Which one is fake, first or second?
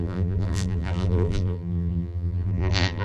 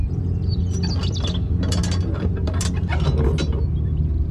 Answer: first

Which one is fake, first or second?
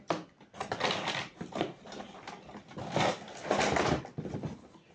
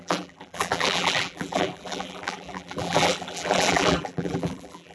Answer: second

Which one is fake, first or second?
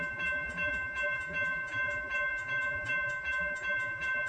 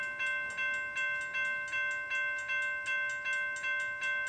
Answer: first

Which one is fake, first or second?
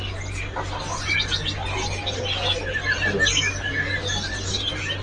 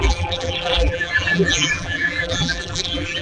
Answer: second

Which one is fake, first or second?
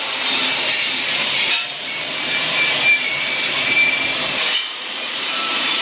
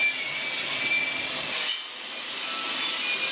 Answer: first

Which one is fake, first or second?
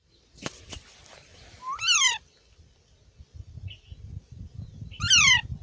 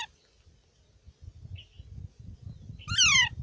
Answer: first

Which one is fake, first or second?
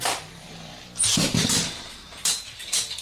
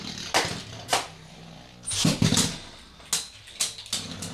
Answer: first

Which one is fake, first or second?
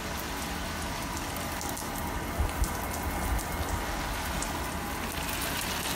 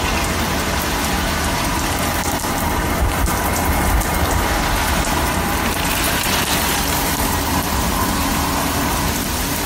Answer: second